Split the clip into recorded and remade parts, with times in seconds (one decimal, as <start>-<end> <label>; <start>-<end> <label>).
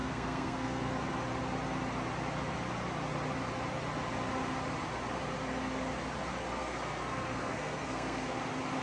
0.0-0.9 remade; 0.9-6.6 recorded; 6.6-8.4 remade; 8.4-8.8 recorded